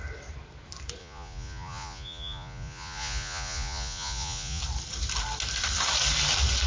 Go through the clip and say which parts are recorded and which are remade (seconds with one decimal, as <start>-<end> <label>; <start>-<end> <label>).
0.0-1.0 recorded; 1.0-4.6 remade; 4.6-6.7 recorded